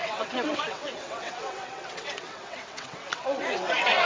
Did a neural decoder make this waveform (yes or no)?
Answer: yes